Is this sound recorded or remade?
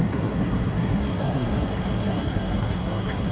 remade